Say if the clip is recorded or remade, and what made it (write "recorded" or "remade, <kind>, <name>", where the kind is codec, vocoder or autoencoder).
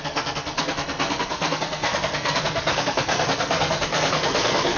remade, codec, SNAC